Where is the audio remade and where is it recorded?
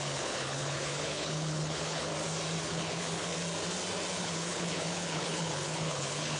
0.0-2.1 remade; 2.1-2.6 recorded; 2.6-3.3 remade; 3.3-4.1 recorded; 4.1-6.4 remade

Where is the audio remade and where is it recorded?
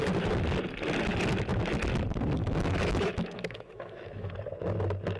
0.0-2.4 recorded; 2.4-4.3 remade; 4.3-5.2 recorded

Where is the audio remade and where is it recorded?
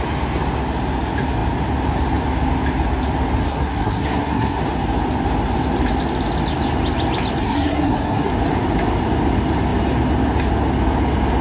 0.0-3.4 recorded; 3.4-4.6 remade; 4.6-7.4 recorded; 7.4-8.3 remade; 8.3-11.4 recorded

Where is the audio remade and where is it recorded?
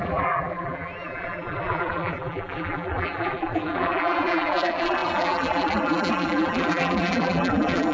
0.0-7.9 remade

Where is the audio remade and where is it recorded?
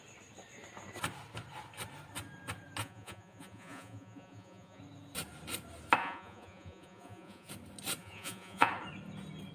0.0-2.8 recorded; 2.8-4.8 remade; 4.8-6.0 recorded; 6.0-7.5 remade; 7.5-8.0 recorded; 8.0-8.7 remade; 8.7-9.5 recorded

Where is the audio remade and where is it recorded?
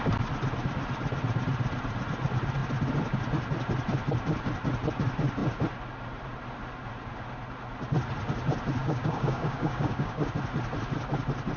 0.0-8.8 recorded; 8.8-10.3 remade; 10.3-11.6 recorded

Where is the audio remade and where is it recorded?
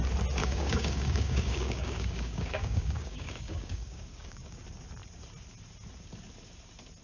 0.0-0.4 recorded; 0.4-4.6 remade; 4.6-7.0 recorded